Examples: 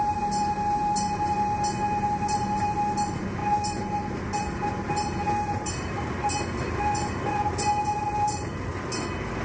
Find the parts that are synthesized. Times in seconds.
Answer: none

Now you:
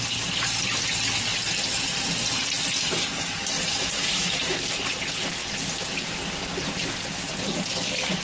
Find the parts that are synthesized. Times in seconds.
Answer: 3.7-4.6 (autoencoder, DAC-VAE)

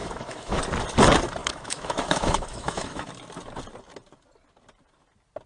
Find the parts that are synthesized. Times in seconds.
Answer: 0.0-0.6 (autoencoder, DAC-VAE); 1.4-3.1

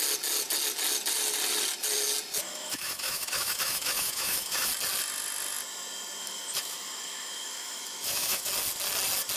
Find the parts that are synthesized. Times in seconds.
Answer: 2.4-4.7 (autoencoder, DAC-VAE); 6.2-8.5

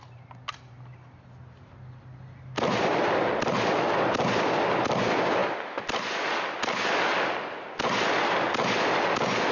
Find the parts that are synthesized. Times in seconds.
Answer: none